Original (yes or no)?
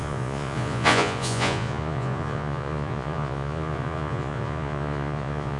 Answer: no